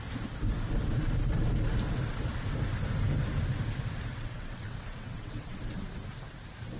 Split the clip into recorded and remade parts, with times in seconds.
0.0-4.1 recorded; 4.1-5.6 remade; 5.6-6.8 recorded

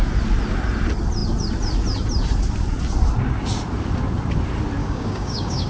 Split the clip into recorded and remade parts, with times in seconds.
0.0-4.8 recorded; 4.8-5.7 remade